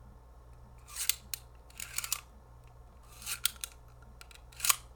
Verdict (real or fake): real